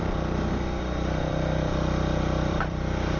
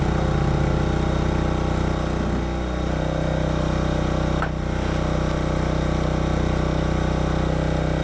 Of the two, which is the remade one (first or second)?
first